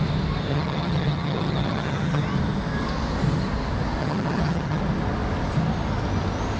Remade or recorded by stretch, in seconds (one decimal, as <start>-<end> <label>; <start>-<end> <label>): 0.0-0.5 recorded; 0.5-2.2 remade; 2.2-4.0 recorded; 4.0-4.8 remade; 4.8-6.6 recorded